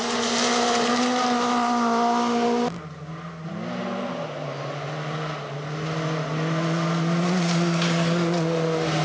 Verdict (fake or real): real